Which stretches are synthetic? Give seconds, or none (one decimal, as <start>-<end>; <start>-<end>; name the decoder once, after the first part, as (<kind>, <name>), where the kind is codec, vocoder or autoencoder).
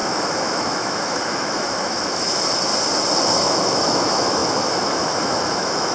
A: 0.0-2.7 (autoencoder, DAC-VAE); 3.2-5.9